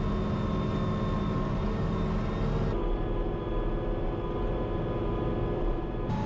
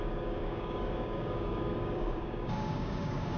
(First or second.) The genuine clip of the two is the first